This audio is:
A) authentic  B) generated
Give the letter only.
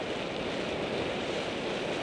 A